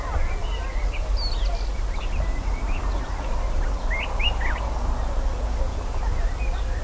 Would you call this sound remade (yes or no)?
no